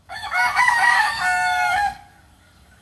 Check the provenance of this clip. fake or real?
fake